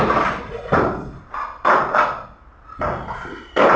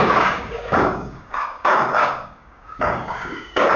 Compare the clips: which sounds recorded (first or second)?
first